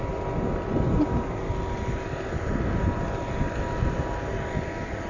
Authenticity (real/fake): real